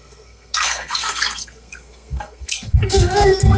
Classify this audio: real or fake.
fake